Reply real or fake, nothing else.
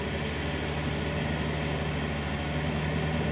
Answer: real